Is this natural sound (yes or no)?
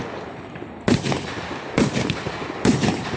yes